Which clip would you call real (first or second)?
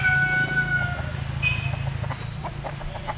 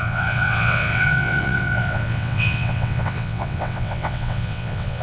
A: first